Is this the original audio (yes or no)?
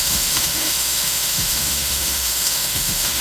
no